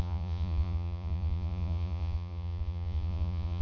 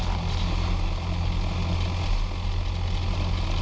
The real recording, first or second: second